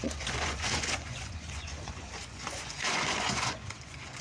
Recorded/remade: remade